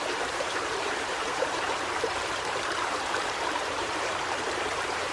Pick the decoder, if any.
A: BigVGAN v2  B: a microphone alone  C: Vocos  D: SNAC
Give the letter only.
A